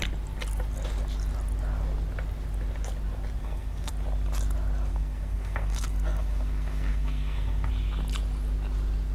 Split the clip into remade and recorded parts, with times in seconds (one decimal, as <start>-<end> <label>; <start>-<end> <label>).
0.0-3.4 recorded; 3.4-3.9 remade; 3.9-4.9 recorded; 4.9-7.7 remade; 7.7-9.1 recorded